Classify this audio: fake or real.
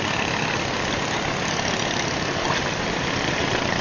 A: real